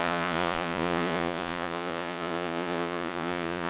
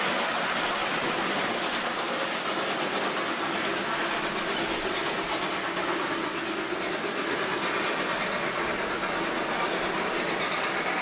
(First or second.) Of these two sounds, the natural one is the second